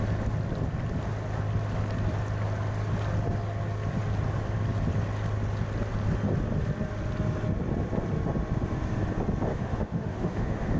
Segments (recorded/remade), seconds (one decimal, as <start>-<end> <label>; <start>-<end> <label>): 0.0-9.5 recorded; 9.5-10.8 remade